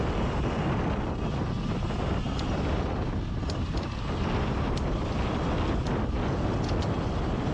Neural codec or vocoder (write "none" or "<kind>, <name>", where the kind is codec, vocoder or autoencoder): none